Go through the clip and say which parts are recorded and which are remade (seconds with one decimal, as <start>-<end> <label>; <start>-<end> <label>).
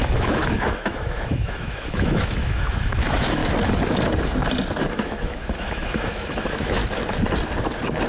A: 0.0-3.4 remade; 3.4-4.9 recorded; 4.9-6.8 remade; 6.8-8.1 recorded